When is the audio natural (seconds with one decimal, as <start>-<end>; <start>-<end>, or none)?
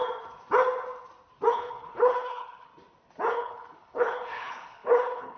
0.0-1.5; 2.7-3.3